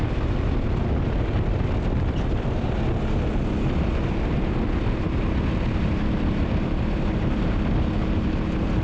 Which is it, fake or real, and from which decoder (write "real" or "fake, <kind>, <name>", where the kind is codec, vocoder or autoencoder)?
real